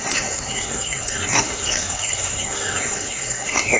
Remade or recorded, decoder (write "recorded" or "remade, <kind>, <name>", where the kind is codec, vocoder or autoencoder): remade, codec, SNAC